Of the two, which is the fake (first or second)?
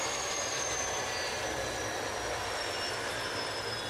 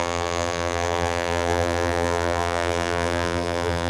second